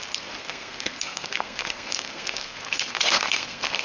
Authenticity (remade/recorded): remade